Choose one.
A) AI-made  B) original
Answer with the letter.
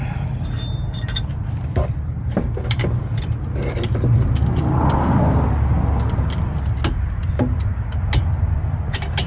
B